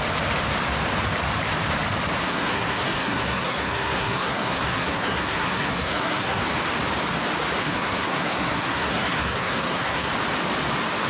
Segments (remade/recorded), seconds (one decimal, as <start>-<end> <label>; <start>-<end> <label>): 0.0-2.2 recorded; 2.2-6.4 remade; 6.4-7.6 recorded; 7.6-10.1 remade; 10.1-11.1 recorded